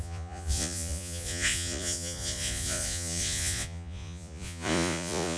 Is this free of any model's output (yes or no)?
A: no